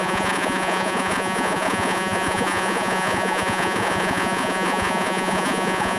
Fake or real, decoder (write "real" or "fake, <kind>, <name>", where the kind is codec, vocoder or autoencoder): fake, vocoder, Vocos